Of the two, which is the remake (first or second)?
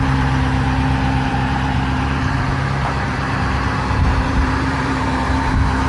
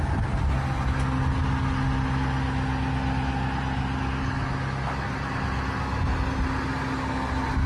first